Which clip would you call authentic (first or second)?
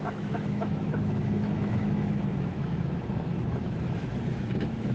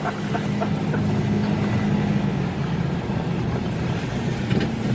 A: second